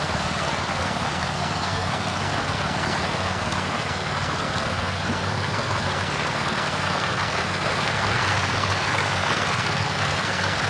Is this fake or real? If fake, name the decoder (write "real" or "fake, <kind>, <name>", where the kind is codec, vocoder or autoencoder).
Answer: fake, codec, SNAC